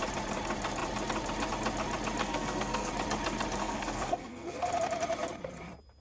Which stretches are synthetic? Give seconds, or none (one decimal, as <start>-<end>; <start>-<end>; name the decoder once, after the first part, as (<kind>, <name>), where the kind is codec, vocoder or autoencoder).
2.2-2.9 (codec, SNAC); 3.6-4.7